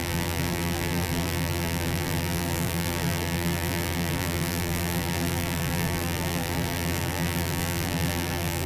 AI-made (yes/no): yes